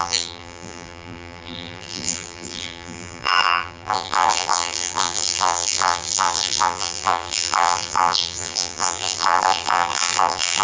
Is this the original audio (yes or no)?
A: no